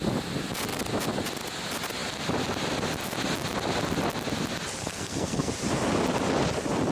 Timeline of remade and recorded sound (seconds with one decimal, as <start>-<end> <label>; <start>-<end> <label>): 0.0-4.8 recorded; 4.8-5.5 remade; 5.5-6.9 recorded